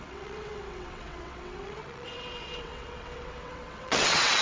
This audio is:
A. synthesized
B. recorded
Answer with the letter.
A